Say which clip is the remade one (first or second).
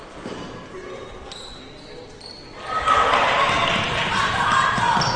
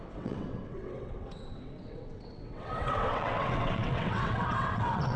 second